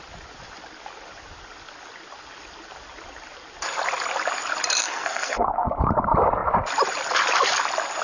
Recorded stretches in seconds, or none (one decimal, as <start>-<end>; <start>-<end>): 0.0-4.8; 5.7-8.0